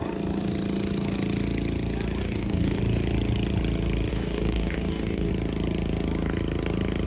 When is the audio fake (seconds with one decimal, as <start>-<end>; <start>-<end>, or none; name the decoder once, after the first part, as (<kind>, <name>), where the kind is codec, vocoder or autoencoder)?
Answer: 2.2-2.8 (codec, DAC); 4.1-5.3